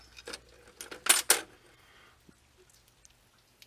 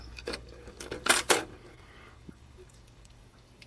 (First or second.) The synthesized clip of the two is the second